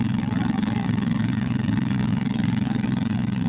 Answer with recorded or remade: remade